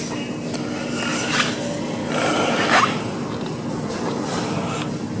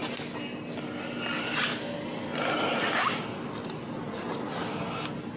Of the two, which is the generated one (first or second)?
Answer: first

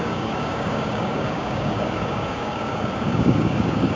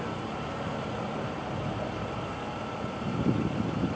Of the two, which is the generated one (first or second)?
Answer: first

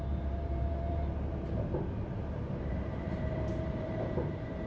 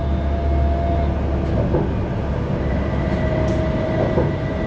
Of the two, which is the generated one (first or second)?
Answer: first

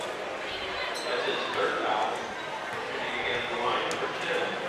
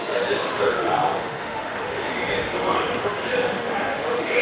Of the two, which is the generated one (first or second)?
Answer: second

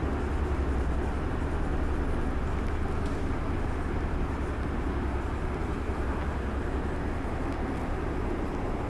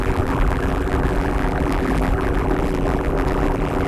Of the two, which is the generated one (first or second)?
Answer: second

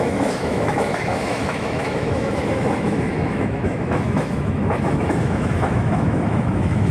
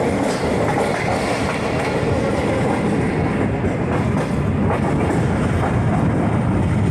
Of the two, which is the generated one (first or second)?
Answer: first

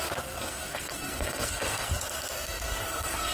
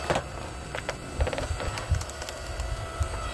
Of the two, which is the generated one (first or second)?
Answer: first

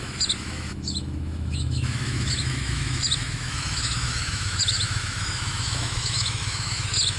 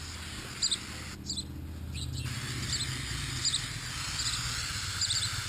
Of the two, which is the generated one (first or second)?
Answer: first